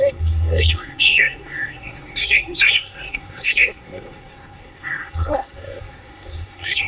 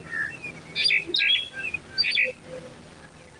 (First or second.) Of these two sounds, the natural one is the second